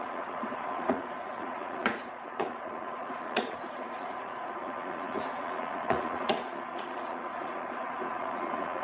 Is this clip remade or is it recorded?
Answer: remade